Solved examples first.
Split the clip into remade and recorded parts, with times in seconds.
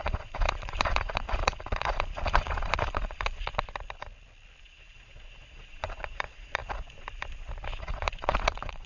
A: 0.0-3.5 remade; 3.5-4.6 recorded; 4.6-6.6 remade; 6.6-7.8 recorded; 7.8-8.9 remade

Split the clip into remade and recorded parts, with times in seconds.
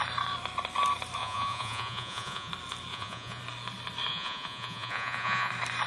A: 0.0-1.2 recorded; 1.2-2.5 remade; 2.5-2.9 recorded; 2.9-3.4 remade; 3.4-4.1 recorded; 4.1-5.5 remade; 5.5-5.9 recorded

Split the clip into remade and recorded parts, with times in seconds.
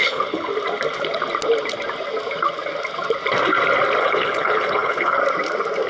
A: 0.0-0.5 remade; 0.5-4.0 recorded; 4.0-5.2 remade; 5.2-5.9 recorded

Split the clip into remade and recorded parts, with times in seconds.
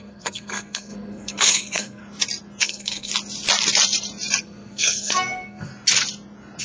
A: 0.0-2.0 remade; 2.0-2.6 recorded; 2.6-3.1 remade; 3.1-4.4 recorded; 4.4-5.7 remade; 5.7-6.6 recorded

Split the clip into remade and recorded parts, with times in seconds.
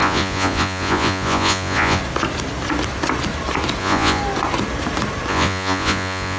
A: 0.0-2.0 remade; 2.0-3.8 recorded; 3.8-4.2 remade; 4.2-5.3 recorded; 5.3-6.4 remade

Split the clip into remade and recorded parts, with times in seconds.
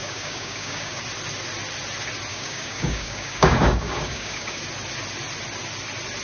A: 0.0-1.0 remade; 1.0-2.3 recorded; 2.3-4.6 remade; 4.6-6.2 recorded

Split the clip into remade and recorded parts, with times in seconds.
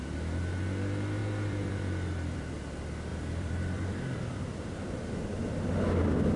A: 0.0-1.2 recorded; 1.2-2.5 remade; 2.5-3.1 recorded; 3.1-5.8 remade; 5.8-6.4 recorded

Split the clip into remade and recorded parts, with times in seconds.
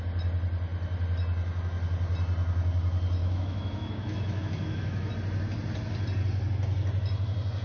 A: 0.0-3.2 recorded; 3.2-5.1 remade; 5.1-7.6 recorded